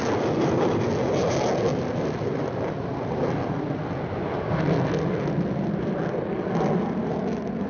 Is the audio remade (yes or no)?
no